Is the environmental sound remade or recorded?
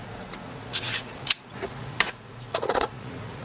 remade